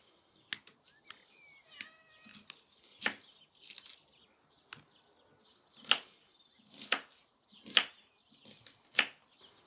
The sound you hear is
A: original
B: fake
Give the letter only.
A